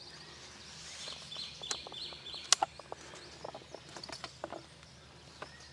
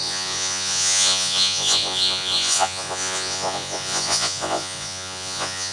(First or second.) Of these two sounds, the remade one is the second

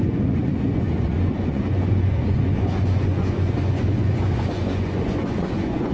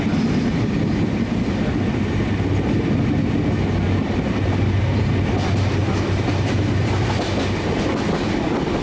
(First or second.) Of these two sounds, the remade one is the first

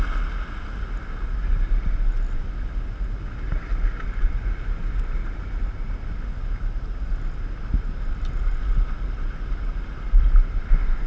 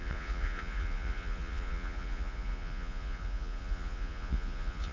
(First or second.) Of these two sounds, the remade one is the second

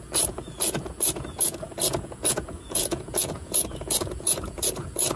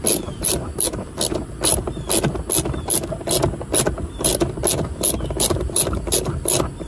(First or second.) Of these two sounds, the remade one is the first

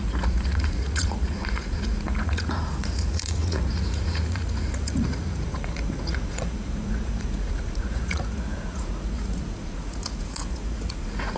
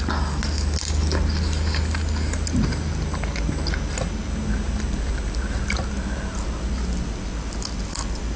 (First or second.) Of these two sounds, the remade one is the first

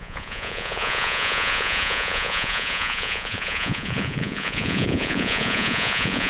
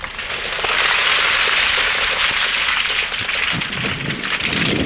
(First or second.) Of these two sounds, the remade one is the first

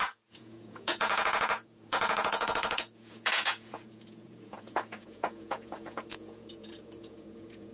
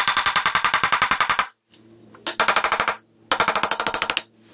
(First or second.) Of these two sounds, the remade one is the first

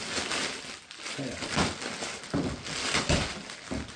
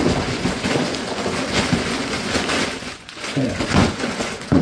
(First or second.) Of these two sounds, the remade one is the second